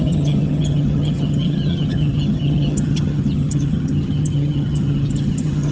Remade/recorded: remade